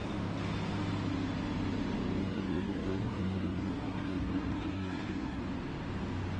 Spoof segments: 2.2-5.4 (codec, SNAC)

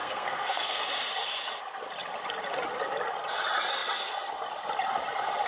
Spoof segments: 0.0-0.8 (codec, SNAC)

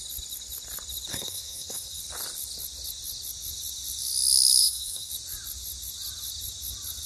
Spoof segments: 1.1-2.0 (codec, SNAC); 4.6-5.1